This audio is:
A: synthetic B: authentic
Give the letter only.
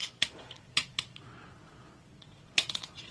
A